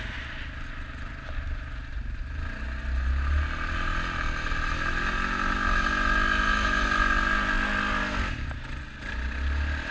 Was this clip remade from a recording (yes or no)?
no